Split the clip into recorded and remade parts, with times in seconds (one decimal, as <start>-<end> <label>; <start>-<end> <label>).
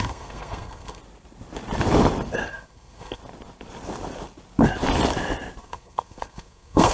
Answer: 0.0-1.0 remade; 1.0-2.5 recorded; 2.5-3.2 remade; 3.2-5.6 recorded; 5.6-6.9 remade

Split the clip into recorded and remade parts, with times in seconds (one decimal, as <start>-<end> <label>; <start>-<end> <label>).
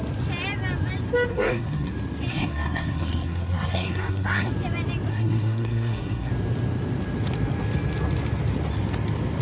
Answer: 0.0-1.3 recorded; 1.3-1.9 remade; 1.9-2.3 recorded; 2.3-4.5 remade; 4.5-5.1 recorded; 5.1-6.3 remade; 6.3-9.4 recorded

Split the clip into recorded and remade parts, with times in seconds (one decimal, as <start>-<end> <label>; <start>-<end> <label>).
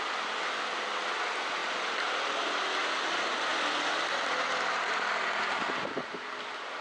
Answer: 0.0-6.8 recorded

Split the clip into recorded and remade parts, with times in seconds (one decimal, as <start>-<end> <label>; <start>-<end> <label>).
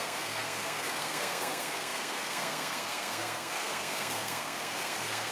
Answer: 0.0-5.3 remade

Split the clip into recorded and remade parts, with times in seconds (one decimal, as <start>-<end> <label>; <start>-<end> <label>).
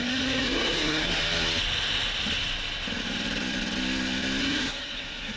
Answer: 0.0-1.2 remade; 1.2-4.4 recorded; 4.4-5.4 remade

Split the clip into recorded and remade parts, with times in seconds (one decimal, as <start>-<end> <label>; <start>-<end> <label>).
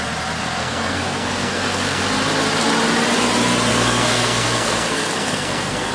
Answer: 0.0-0.4 recorded; 0.4-2.0 remade; 2.0-3.7 recorded; 3.7-5.9 remade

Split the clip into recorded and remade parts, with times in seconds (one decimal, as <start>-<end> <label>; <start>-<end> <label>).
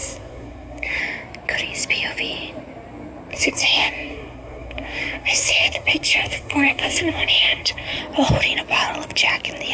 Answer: 0.0-1.0 remade; 1.0-3.3 recorded; 3.3-8.0 remade; 8.0-9.7 recorded